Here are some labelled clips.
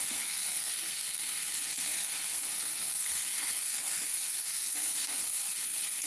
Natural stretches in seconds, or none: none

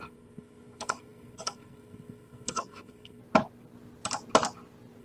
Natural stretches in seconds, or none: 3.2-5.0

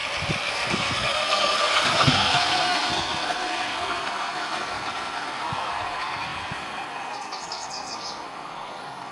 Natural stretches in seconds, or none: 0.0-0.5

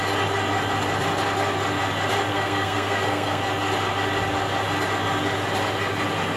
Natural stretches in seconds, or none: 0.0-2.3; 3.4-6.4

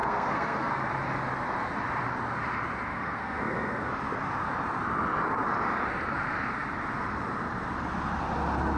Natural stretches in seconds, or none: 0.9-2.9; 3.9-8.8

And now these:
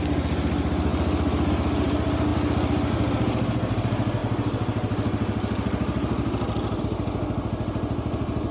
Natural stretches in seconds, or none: 0.0-8.5

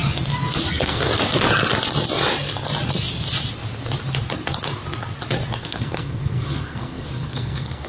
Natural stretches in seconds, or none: 0.0-0.7; 1.1-5.5